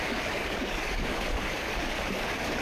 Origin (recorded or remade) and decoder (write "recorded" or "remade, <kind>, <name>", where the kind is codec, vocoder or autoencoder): remade, codec, DAC